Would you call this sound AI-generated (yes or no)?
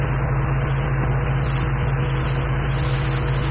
no